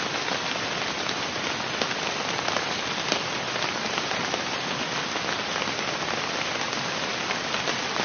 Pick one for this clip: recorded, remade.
recorded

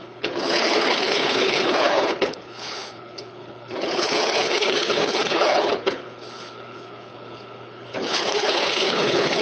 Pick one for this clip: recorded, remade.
remade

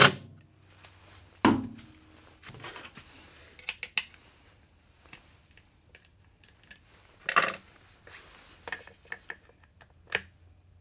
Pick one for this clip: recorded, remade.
recorded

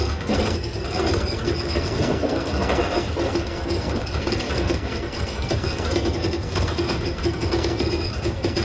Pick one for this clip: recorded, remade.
remade